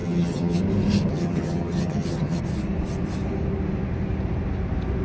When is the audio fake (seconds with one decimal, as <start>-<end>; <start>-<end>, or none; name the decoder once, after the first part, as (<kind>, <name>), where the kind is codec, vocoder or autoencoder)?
0.0-0.6 (vocoder, HiFi-GAN); 1.1-2.4

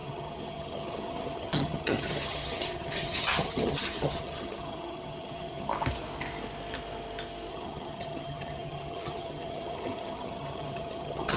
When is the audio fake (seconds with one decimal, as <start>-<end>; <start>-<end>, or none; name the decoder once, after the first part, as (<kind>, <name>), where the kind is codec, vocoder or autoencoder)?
0.0-5.7 (vocoder, HiFi-GAN); 7.5-11.4

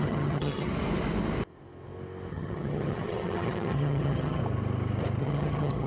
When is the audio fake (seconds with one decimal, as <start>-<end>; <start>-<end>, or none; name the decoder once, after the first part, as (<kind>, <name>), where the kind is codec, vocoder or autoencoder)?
0.0-0.7 (vocoder, HiFi-GAN); 2.3-4.4; 5.2-5.9

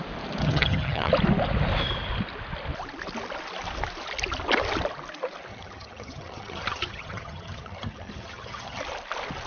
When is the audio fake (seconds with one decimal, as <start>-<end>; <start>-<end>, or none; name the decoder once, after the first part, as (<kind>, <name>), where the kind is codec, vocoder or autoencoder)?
0.4-1.1 (vocoder, HiFi-GAN); 5.5-8.8

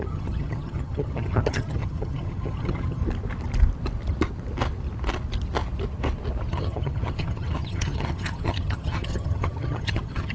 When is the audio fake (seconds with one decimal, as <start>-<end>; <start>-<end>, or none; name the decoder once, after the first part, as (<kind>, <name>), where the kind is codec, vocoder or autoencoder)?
0.0-3.0 (vocoder, HiFi-GAN); 6.5-10.3

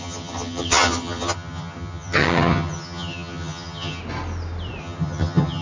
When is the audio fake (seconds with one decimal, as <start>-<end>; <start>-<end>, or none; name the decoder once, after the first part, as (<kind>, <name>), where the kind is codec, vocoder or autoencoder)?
0.0-4.0 (vocoder, HiFi-GAN); 4.8-5.6